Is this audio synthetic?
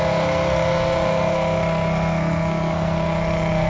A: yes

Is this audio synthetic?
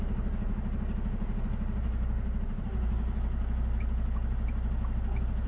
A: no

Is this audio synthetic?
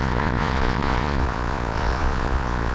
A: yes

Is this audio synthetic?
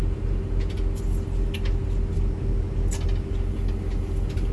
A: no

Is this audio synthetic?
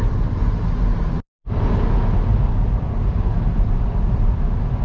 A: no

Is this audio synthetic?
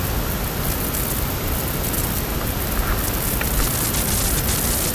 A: no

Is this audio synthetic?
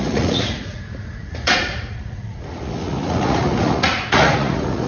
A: yes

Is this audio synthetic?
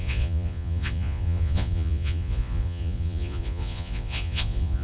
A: yes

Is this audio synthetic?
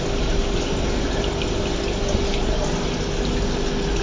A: no